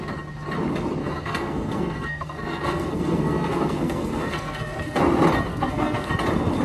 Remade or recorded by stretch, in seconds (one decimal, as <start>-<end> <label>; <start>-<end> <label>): 0.0-1.0 recorded; 1.0-5.0 remade; 5.0-5.5 recorded; 5.5-6.1 remade; 6.1-6.6 recorded